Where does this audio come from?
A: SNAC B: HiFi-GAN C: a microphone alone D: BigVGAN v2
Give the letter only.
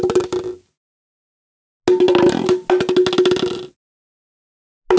C